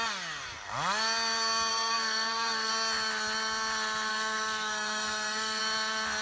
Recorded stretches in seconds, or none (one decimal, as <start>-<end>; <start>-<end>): 0.0-1.7; 2.7-4.1; 5.6-6.2